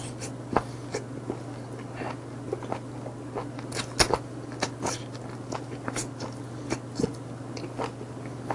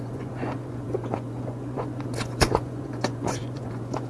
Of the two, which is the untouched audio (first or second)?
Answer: first